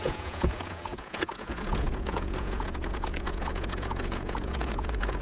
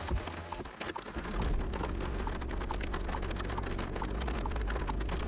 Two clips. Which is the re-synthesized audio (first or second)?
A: first